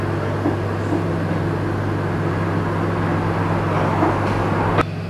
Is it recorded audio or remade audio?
recorded